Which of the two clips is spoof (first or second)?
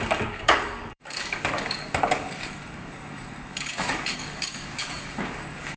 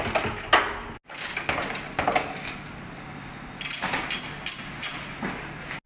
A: first